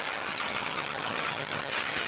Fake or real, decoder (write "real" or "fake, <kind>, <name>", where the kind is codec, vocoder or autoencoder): fake, vocoder, HiFi-GAN